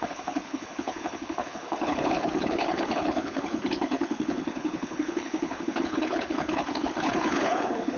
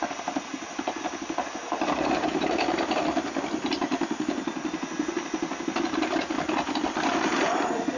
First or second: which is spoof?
first